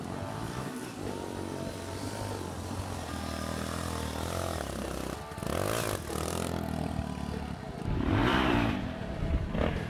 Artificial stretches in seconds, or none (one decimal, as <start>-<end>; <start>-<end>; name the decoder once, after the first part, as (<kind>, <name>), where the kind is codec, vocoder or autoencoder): 8.2-8.8 (vocoder, BigVGAN v2)